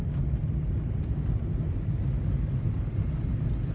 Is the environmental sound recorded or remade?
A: recorded